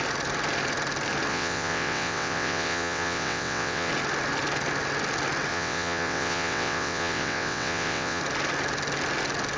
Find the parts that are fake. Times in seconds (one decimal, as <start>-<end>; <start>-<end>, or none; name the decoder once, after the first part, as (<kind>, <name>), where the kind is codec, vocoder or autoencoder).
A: 1.3-3.9 (vocoder, WaveNeXt); 5.5-8.2